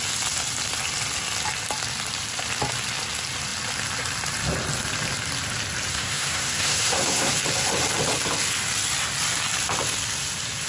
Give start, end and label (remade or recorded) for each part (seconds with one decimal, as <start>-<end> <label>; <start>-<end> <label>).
0.0-5.9 recorded; 5.9-7.3 remade; 7.3-10.7 recorded